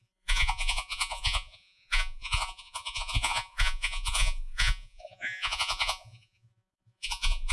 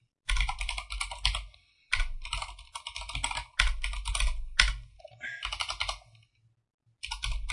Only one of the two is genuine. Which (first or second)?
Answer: second